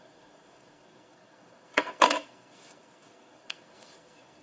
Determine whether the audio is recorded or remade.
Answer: remade